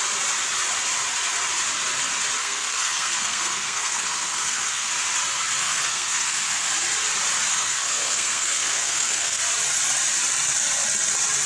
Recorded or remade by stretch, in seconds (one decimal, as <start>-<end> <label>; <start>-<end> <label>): 0.0-2.4 recorded; 2.4-4.9 remade; 4.9-5.6 recorded; 5.6-6.7 remade; 6.7-7.5 recorded; 7.5-9.4 remade; 9.4-11.5 recorded